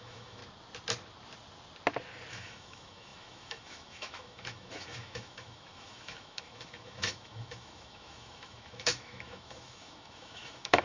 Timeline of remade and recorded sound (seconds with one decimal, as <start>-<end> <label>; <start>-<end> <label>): 0.0-0.4 remade; 0.4-2.3 recorded; 2.3-10.8 remade